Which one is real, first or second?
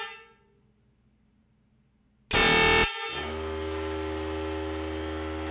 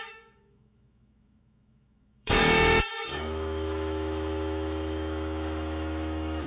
first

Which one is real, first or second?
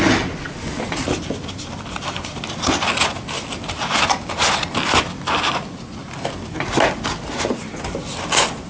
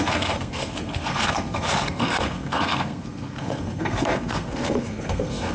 first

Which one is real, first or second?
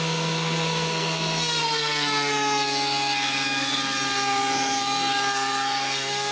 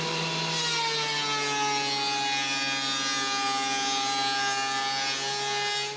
second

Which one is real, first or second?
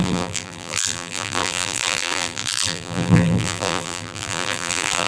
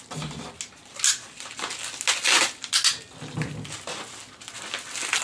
second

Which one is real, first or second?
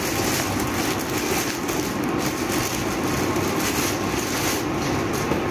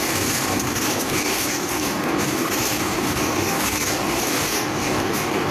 first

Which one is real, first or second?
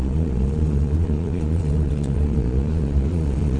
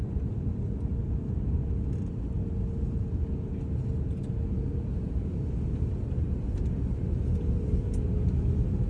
second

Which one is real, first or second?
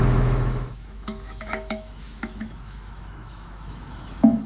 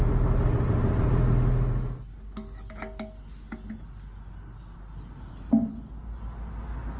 second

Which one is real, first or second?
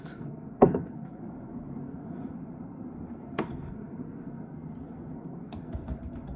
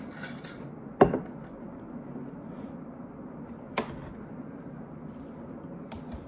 second